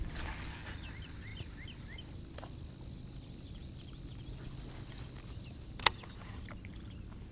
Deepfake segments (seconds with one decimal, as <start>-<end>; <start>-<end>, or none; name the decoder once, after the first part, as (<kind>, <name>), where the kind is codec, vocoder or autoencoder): none